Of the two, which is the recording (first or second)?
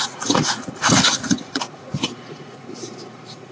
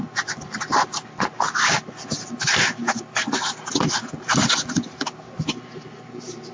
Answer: second